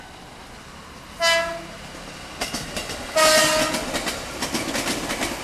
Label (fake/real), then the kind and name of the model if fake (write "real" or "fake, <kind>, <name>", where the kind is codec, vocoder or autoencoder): real